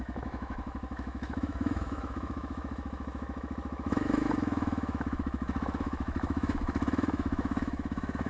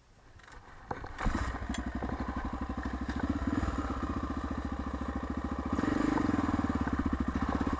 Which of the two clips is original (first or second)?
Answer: second